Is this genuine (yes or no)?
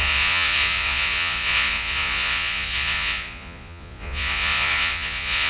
no